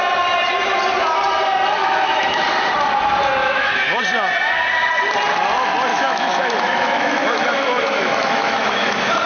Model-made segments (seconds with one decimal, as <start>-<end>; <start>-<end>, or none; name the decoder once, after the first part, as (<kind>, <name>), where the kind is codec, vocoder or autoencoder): 1.8-2.4 (autoencoder, DAC-VAE); 3.4-4.0; 5.9-8.9